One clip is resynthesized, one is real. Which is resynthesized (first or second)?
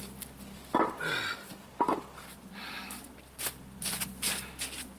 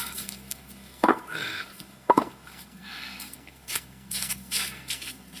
second